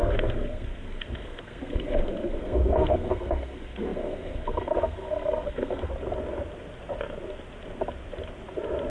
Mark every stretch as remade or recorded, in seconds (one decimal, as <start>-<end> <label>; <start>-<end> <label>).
0.0-5.9 remade; 5.9-8.9 recorded